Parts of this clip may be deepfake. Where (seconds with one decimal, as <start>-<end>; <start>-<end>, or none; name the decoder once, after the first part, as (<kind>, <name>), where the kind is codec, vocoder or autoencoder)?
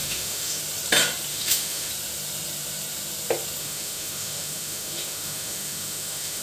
0.0-0.6 (autoencoder, DAC-VAE); 1.3-1.9; 3.6-6.4